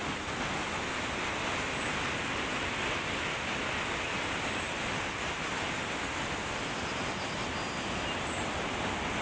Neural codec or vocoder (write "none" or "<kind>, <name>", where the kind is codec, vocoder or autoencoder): none